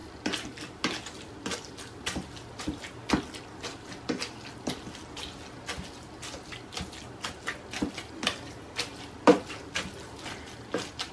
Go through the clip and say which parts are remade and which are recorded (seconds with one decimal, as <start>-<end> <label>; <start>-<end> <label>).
0.0-11.1 recorded